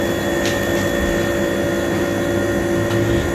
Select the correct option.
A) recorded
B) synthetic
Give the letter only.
A